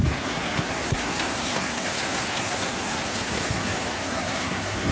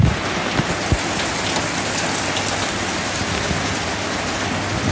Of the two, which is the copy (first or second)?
first